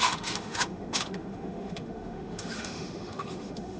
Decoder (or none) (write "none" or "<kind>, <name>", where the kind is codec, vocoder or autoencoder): autoencoder, DAC-VAE